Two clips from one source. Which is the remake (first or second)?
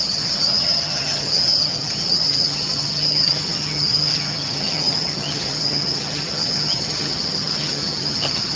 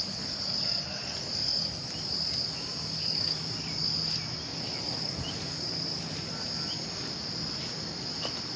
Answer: first